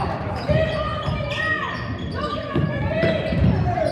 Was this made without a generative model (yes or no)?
yes